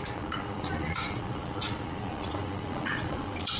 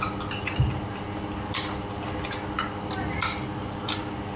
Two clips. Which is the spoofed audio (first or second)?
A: first